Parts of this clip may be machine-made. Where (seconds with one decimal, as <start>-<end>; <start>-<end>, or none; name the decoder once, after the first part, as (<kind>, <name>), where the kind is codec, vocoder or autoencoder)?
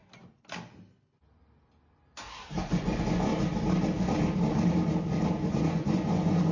2.7-3.3 (vocoder, Vocos); 5.5-6.5